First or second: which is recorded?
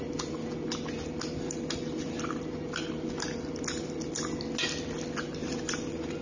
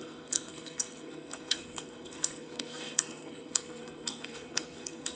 first